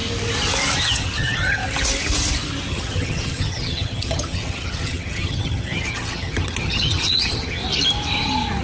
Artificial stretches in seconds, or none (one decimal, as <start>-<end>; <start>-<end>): 0.8-1.6; 2.7-7.6